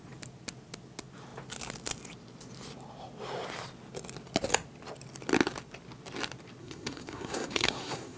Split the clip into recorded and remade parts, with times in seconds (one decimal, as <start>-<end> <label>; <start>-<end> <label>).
0.0-6.6 recorded; 6.6-8.2 remade